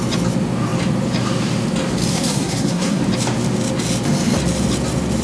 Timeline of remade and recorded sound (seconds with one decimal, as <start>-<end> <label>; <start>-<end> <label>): 0.0-2.1 recorded; 2.1-3.0 remade; 3.0-5.2 recorded

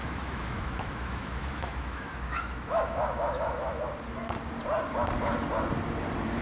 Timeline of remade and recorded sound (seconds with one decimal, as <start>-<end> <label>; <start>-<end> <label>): 0.0-3.8 remade; 3.8-6.4 recorded

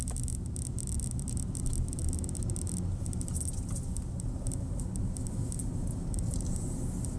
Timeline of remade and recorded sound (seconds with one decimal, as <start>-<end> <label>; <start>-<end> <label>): 0.0-7.2 recorded

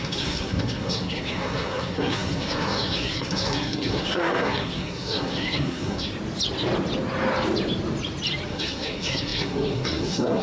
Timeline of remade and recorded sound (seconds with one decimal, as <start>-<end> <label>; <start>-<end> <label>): 0.0-6.1 remade; 6.1-8.5 recorded; 8.5-10.4 remade

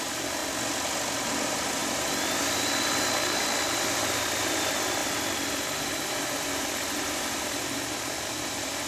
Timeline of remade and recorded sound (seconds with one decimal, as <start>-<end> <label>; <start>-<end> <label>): 0.0-0.4 remade; 0.4-1.3 recorded; 1.3-1.8 remade; 1.8-4.0 recorded; 4.0-5.0 remade; 5.0-6.1 recorded; 6.1-8.9 remade

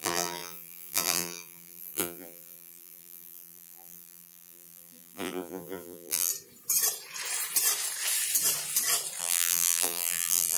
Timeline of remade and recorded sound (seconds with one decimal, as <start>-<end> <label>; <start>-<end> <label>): 0.0-6.3 remade; 6.3-9.2 recorded; 9.2-10.6 remade